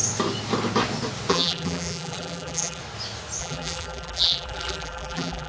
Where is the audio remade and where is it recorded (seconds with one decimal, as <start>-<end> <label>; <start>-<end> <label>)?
0.0-1.3 recorded; 1.3-2.8 remade; 2.8-3.4 recorded; 3.4-5.5 remade

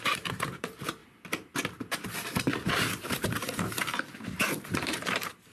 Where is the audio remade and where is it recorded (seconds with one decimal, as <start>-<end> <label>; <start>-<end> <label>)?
0.0-1.0 remade; 1.0-2.7 recorded; 2.7-5.5 remade

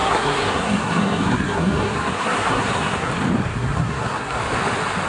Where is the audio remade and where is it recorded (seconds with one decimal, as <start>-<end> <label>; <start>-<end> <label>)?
0.0-3.1 remade; 3.1-3.5 recorded; 3.5-4.4 remade; 4.4-5.1 recorded

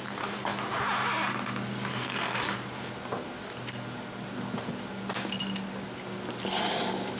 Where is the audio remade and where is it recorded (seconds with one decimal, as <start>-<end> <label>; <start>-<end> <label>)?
0.0-1.9 recorded; 1.9-2.4 remade; 2.4-7.2 recorded

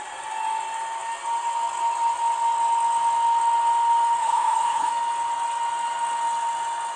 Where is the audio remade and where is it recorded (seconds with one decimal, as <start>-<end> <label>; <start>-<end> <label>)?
0.0-4.2 recorded; 4.2-4.9 remade; 4.9-7.0 recorded

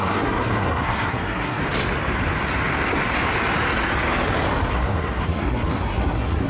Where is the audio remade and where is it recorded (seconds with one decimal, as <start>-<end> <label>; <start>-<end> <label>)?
0.0-1.6 remade; 1.6-4.7 recorded; 4.7-6.5 remade